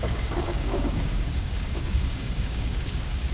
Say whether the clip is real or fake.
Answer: fake